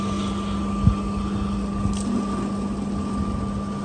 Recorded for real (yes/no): yes